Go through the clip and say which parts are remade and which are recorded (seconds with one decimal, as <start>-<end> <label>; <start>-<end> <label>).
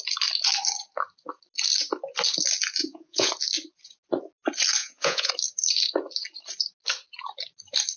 0.0-2.8 recorded; 2.8-3.3 remade; 3.3-4.8 recorded; 4.8-5.3 remade; 5.3-8.0 recorded